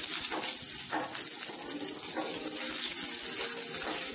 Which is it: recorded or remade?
recorded